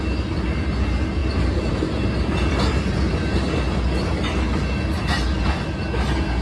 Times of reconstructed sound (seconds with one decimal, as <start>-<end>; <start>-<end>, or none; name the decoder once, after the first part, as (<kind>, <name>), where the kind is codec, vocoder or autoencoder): none